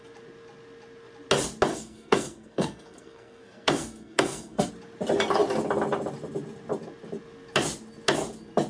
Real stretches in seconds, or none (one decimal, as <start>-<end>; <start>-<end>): 0.0-1.7; 4.7-8.7